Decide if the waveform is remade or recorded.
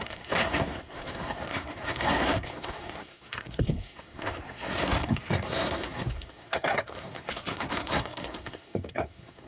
remade